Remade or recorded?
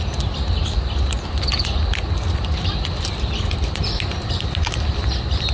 recorded